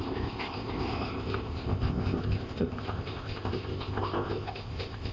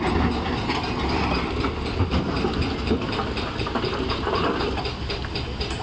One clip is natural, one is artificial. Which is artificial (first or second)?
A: first